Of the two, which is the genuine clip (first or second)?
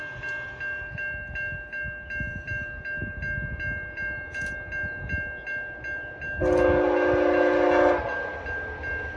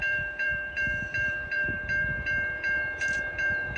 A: first